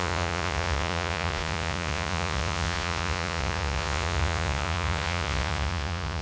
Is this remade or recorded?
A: remade